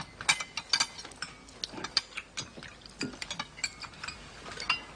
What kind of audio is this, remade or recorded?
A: recorded